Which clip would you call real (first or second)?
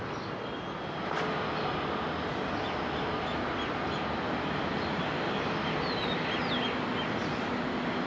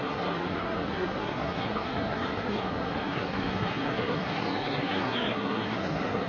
first